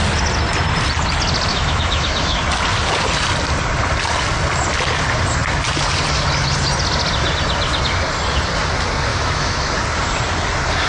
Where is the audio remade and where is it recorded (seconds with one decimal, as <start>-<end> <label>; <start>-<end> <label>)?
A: 0.0-1.5 recorded; 1.5-2.4 remade; 2.4-9.1 recorded; 9.1-9.7 remade; 9.7-10.9 recorded